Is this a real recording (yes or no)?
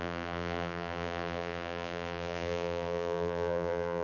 no